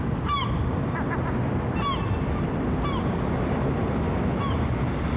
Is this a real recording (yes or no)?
yes